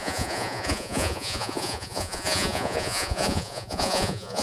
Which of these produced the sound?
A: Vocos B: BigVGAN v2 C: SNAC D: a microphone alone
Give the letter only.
A